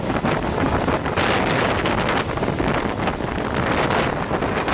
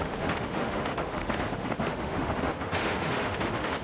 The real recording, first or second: first